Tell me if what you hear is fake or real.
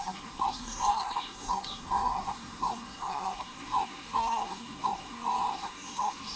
fake